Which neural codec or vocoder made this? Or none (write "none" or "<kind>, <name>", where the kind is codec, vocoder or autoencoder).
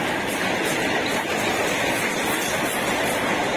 none